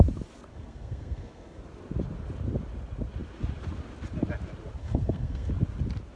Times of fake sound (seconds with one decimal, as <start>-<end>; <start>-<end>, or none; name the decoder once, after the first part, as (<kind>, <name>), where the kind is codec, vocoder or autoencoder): 0.5-1.6 (codec, SNAC); 4.8-5.5